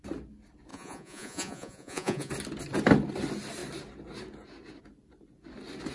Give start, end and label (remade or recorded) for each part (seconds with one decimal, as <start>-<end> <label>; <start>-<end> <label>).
0.0-0.7 recorded; 0.7-2.3 remade; 2.3-5.9 recorded